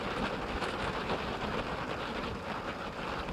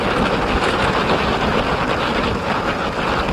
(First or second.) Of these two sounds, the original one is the second